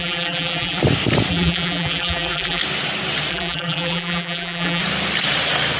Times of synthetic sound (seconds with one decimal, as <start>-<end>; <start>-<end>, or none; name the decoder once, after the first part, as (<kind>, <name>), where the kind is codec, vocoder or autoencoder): 0.0-0.8 (vocoder, BigVGAN v2); 1.3-2.6; 3.3-4.8